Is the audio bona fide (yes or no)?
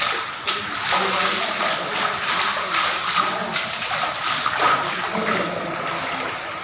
yes